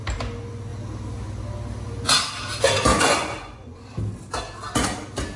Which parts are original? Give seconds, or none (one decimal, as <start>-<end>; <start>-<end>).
0.0-2.9; 3.8-5.4